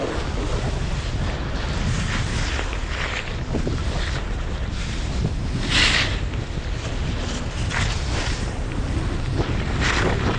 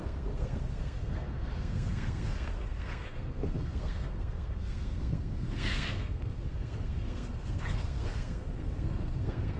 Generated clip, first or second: second